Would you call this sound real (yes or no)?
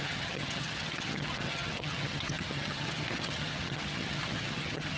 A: no